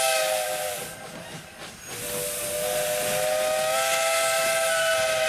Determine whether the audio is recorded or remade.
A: recorded